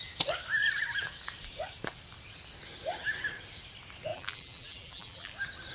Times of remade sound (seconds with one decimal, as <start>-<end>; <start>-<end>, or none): 4.1-5.3

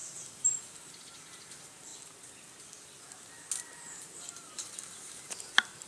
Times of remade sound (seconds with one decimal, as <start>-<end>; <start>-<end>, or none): 0.9-1.9; 3.6-5.9